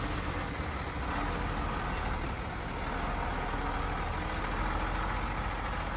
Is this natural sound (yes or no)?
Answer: yes